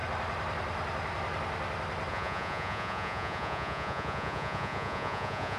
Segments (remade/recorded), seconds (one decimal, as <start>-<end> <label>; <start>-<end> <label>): 0.0-2.1 recorded; 2.1-5.6 remade